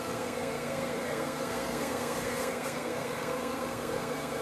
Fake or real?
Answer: fake